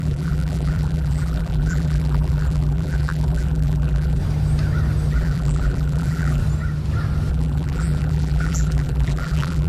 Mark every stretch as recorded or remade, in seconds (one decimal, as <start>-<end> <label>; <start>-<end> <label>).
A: 0.0-4.2 remade; 4.2-5.1 recorded; 5.1-6.4 remade; 6.4-7.3 recorded; 7.3-9.7 remade